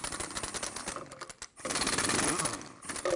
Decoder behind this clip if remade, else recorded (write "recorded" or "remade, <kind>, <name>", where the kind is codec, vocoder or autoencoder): recorded